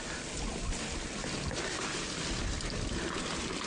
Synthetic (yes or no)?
no